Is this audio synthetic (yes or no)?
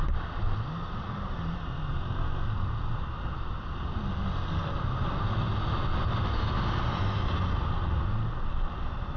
no